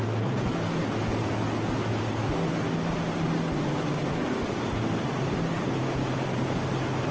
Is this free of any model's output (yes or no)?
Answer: yes